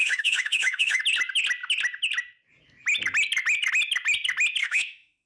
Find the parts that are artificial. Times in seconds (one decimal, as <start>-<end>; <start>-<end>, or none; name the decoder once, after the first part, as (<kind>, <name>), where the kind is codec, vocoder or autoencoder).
0.0-1.0 (autoencoder, DAC-VAE); 4.6-5.3